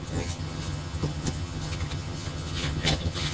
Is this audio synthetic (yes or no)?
yes